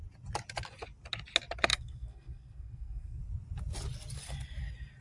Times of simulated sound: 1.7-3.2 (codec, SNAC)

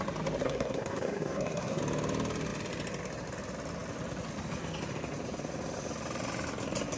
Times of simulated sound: 0.4-1.8 (codec, SNAC)

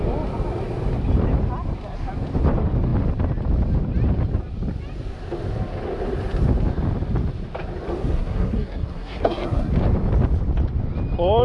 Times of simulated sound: 8.0-9.7 (codec, SNAC)

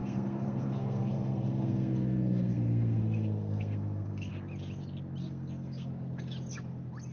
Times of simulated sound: 0.0-4.3 (codec, SNAC); 5.2-5.9